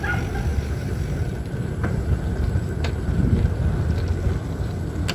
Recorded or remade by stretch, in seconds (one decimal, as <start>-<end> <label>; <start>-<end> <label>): 0.0-0.5 recorded; 0.5-3.6 remade; 3.6-5.1 recorded